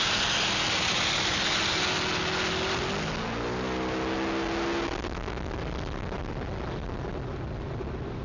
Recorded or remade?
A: recorded